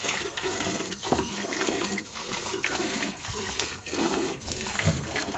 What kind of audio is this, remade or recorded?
remade